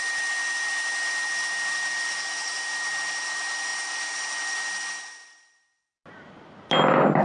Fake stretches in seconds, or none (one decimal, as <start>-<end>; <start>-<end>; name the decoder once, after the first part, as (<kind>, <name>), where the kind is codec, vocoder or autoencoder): none